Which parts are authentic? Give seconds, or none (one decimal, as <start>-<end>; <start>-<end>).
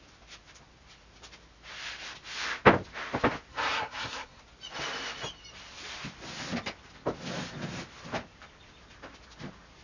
0.0-3.5; 4.4-9.8